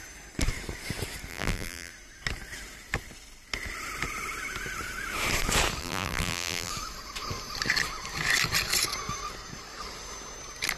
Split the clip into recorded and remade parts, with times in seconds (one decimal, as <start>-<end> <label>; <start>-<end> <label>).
0.0-1.3 recorded; 1.3-1.9 remade; 1.9-5.8 recorded; 5.8-6.7 remade; 6.7-10.8 recorded